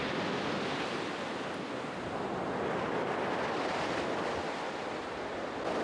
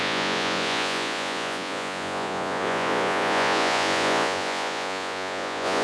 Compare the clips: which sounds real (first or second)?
first